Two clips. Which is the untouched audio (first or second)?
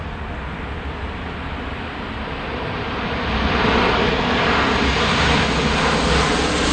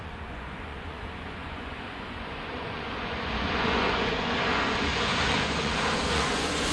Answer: first